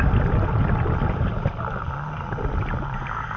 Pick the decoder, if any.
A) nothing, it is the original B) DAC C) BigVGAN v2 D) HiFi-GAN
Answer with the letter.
A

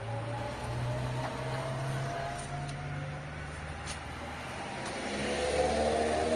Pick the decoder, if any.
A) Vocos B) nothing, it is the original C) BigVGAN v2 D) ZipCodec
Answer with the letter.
B